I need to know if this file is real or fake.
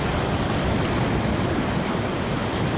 real